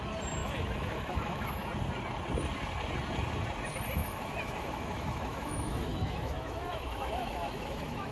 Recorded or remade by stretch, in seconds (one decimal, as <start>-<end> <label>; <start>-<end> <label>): 0.0-0.4 recorded; 0.4-1.7 remade; 1.7-4.0 recorded; 4.0-8.1 remade